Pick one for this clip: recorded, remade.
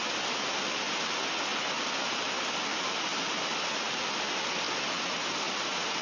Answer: recorded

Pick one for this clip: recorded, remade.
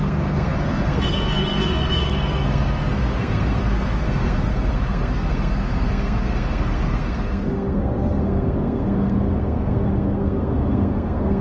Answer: remade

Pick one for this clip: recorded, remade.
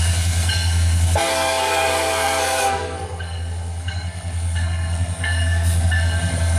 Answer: remade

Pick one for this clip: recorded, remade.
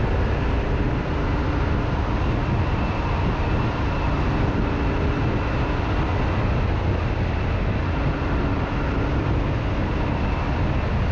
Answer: recorded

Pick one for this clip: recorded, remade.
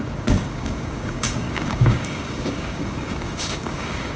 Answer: remade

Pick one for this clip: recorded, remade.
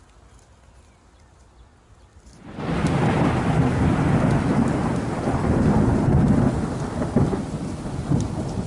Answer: recorded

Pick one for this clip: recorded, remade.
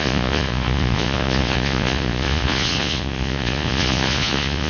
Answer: remade